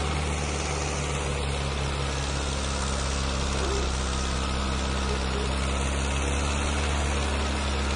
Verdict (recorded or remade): recorded